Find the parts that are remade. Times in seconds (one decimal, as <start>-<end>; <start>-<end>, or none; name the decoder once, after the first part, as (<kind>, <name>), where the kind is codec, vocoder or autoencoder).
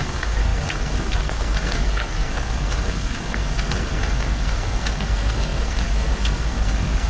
0.0-7.1 (codec, SNAC)